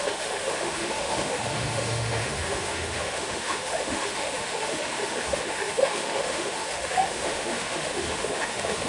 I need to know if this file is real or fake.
fake